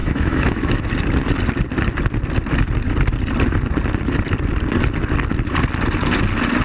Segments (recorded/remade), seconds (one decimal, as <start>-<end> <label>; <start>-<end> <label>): 0.0-0.8 remade; 0.8-6.6 recorded